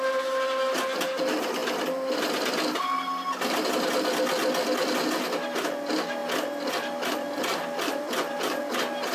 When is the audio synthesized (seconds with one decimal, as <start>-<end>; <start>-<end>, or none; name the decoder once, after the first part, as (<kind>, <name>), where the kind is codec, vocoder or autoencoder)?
7.5-8.6 (vocoder, BigVGAN v2)